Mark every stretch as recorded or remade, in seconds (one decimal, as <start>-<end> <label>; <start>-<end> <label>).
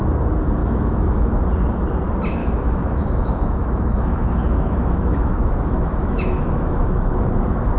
0.0-0.6 recorded; 0.6-1.4 remade; 1.4-2.4 recorded; 2.4-7.0 remade; 7.0-7.8 recorded